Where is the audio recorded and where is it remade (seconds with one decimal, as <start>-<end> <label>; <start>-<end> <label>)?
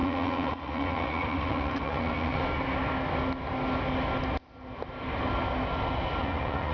0.0-2.4 remade; 2.4-6.2 recorded; 6.2-6.7 remade